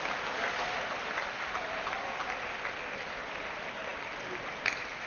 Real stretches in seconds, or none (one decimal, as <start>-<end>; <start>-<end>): 0.0-5.1

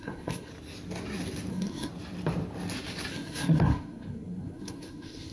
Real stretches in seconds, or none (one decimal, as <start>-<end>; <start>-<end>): 0.5-1.5; 1.9-3.1